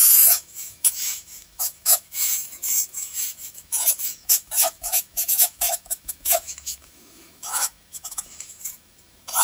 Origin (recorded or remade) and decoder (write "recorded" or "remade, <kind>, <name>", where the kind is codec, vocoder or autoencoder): remade, autoencoder, DAC-VAE